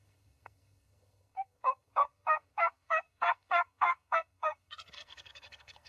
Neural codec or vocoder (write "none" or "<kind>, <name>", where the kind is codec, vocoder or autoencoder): codec, SNAC